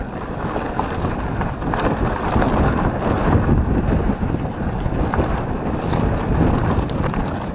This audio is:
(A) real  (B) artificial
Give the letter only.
A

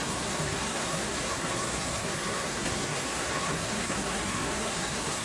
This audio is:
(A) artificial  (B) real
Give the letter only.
A